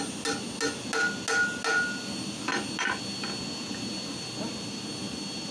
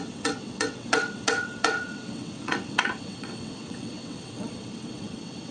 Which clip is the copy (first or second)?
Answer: second